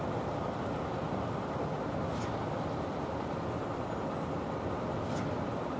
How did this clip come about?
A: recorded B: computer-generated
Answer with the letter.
A